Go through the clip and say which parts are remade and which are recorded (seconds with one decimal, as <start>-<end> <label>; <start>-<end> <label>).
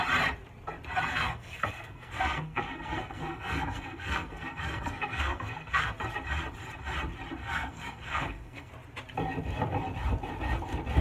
0.0-1.1 recorded; 1.1-5.9 remade; 5.9-7.4 recorded; 7.4-8.7 remade; 8.7-11.0 recorded